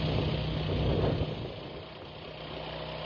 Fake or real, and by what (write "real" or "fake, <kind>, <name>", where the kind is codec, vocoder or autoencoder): real